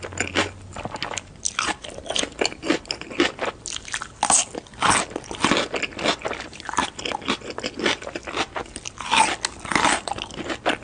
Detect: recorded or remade recorded